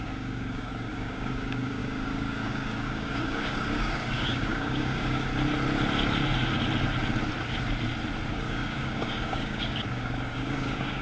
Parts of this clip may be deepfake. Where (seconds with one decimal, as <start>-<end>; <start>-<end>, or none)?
0.0-5.3; 8.3-11.0